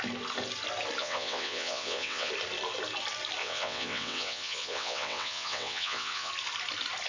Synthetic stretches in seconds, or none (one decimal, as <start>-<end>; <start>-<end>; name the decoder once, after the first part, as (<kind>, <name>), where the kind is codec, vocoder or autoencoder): 1.0-2.3 (vocoder, WaveNeXt); 3.4-6.3